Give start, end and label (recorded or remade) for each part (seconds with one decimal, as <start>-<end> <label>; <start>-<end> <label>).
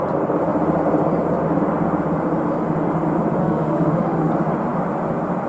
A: 0.0-3.4 recorded; 3.4-4.3 remade; 4.3-5.5 recorded